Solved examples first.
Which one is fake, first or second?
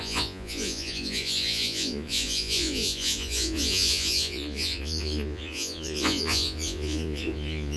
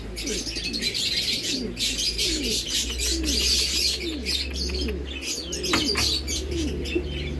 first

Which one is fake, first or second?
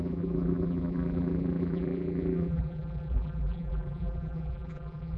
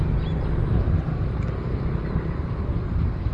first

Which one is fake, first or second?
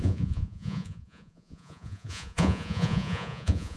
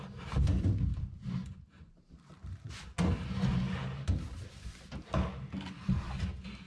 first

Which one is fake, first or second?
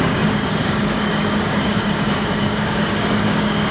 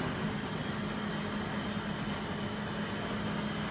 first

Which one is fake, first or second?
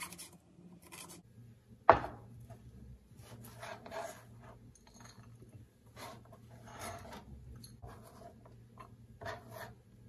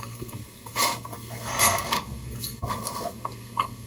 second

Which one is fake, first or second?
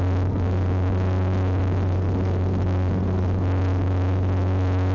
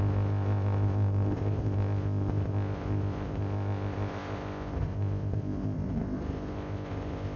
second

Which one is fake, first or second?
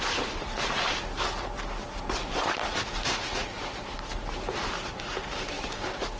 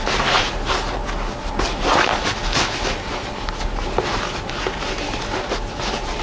first